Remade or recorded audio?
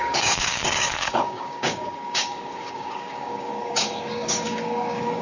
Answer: remade